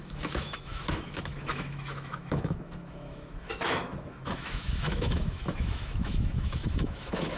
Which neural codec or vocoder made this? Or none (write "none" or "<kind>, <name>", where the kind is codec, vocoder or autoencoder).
autoencoder, DAC-VAE